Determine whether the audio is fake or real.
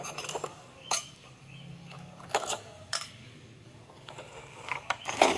fake